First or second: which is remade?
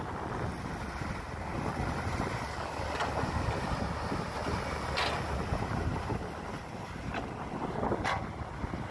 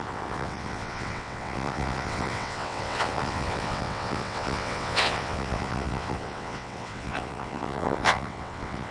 second